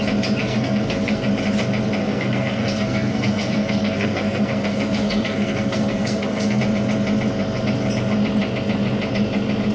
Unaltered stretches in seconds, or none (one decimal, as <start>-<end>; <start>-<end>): 0.0-0.4; 1.3-2.0; 6.6-9.7